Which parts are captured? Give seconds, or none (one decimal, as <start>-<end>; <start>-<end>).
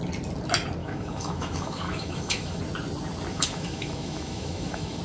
0.0-0.8; 2.6-3.3